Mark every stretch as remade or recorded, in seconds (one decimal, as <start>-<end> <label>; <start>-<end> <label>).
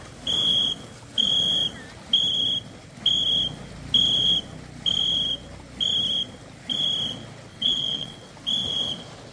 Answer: 0.0-7.5 recorded; 7.5-8.3 remade; 8.3-9.3 recorded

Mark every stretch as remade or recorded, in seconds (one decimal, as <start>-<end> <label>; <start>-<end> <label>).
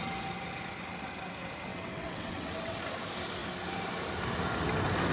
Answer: 0.0-1.7 recorded; 1.7-2.8 remade; 2.8-5.1 recorded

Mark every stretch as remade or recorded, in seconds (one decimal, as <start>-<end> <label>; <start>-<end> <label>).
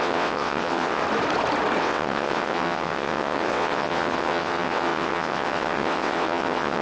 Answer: 0.0-1.0 remade; 1.0-1.8 recorded; 1.8-6.8 remade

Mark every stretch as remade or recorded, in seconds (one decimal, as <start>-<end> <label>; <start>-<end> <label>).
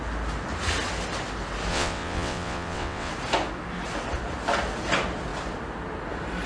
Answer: 0.0-1.7 recorded; 1.7-3.1 remade; 3.1-6.5 recorded